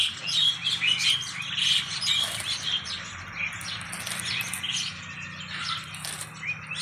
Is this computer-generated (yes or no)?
no